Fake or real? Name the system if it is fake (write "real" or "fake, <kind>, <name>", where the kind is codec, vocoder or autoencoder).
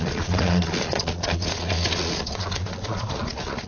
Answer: fake, vocoder, Vocos